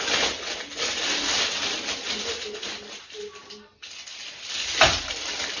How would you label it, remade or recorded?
recorded